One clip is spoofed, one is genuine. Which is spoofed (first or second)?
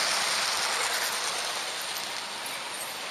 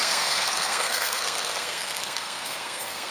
second